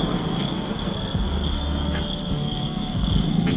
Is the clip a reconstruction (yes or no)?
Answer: yes